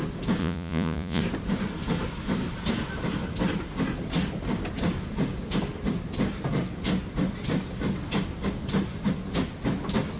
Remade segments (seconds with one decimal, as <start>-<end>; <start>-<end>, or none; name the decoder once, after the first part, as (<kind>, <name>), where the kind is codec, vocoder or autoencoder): 0.4-1.2 (vocoder, Vocos)